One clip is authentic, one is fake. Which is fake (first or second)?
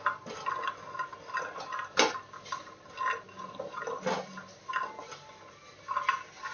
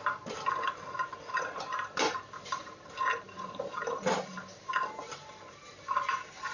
second